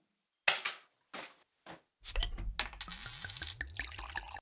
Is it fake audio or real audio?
real